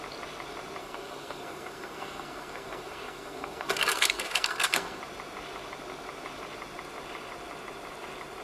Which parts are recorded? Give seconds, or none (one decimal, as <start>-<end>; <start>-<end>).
0.0-0.8; 5.0-8.4